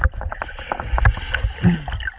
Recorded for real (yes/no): yes